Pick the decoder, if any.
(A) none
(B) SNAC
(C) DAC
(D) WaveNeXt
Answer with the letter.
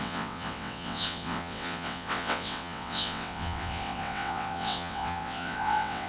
D